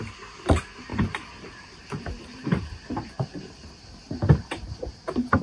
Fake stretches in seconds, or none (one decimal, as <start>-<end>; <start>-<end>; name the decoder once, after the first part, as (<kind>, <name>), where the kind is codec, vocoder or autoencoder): 0.9-4.1 (vocoder, BigVGAN v2)